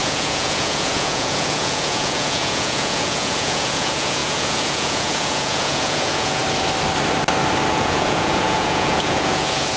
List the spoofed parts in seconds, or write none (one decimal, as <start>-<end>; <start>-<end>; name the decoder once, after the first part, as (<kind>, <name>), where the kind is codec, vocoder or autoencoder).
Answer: 0.0-6.4 (vocoder, Vocos); 7.7-9.8